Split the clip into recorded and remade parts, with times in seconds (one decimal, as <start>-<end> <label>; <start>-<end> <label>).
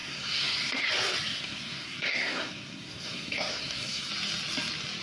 0.0-0.9 remade; 0.9-1.3 recorded; 1.3-4.1 remade; 4.1-5.0 recorded